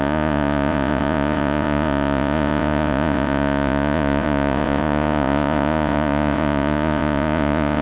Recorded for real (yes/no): no